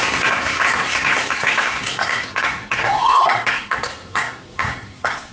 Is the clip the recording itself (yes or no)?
no